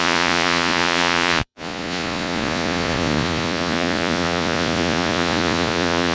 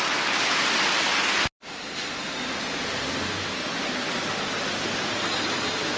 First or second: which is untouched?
second